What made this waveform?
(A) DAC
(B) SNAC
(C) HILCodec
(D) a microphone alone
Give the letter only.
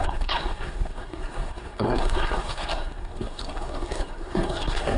B